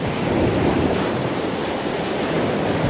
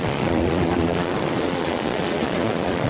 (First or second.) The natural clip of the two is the first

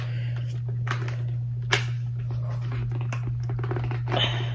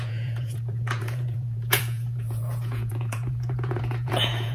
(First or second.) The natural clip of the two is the first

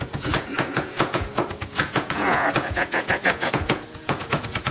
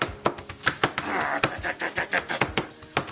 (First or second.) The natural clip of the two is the second